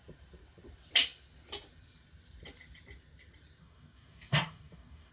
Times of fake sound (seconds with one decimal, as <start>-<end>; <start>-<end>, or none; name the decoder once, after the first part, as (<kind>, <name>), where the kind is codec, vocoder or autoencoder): 3.6-5.1 (codec, DAC)